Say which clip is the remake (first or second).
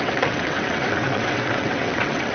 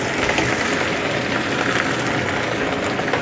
first